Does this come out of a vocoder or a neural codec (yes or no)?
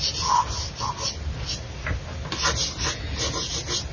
no